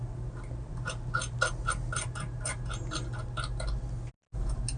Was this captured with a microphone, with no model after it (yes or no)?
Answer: yes